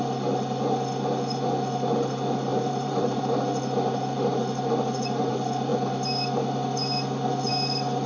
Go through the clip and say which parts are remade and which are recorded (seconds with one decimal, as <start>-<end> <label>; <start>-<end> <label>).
0.0-2.5 recorded; 2.5-3.2 remade; 3.2-8.1 recorded

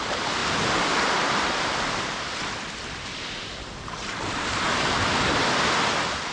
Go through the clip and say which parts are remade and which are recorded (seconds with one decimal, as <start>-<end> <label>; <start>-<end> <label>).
0.0-0.4 recorded; 0.4-4.2 remade; 4.2-6.3 recorded

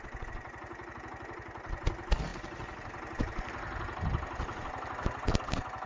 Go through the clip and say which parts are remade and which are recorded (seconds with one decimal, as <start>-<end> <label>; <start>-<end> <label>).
0.0-5.9 recorded

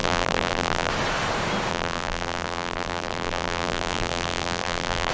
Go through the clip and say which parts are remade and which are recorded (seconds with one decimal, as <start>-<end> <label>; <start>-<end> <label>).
0.0-0.9 remade; 0.9-1.7 recorded; 1.7-5.1 remade

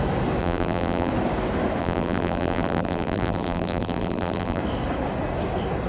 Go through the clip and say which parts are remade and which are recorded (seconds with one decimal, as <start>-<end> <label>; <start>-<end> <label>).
0.0-0.4 recorded; 0.4-1.1 remade; 1.1-1.8 recorded; 1.8-4.6 remade; 4.6-5.9 recorded

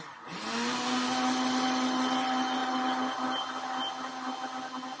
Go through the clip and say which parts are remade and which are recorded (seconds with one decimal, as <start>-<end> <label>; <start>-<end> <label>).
0.0-5.0 recorded